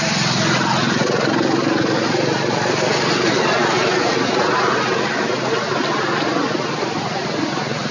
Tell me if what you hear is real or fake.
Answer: real